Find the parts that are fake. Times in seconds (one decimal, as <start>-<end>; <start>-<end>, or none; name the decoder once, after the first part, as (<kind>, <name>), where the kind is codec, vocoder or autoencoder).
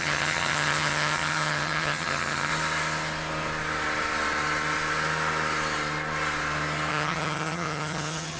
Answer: 0.0-2.5 (vocoder, HiFi-GAN); 6.9-8.4